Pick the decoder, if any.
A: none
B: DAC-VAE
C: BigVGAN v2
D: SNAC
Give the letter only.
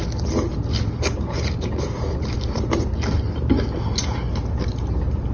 A